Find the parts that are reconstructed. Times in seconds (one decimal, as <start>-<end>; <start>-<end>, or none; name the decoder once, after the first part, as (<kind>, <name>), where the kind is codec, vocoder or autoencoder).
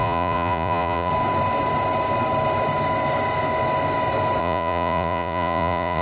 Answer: 0.0-1.1 (vocoder, Vocos); 4.4-6.0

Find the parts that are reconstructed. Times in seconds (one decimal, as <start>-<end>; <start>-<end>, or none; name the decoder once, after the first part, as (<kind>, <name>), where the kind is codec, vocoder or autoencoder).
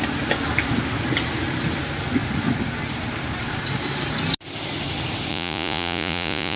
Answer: 5.3-6.6 (vocoder, Vocos)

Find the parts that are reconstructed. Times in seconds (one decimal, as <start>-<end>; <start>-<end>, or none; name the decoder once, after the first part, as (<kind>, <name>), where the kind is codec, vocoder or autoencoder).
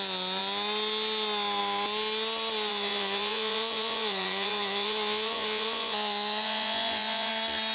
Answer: 2.7-7.3 (vocoder, Vocos)